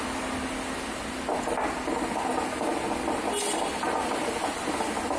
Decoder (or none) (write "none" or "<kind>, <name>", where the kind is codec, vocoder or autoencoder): none